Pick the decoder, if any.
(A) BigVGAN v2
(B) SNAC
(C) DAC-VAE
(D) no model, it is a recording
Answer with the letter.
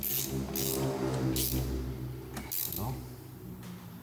D